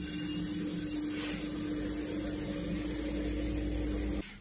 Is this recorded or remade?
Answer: recorded